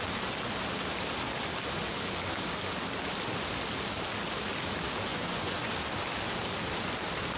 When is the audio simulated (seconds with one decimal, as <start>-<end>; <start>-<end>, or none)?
5.1-5.7